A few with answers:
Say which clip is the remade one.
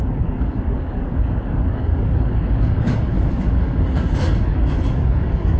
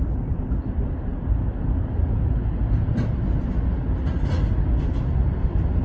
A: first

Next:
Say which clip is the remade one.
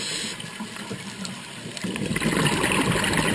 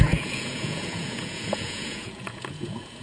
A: second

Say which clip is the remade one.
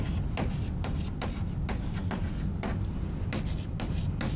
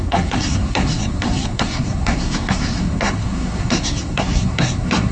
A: second